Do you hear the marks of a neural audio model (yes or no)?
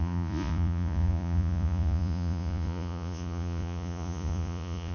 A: yes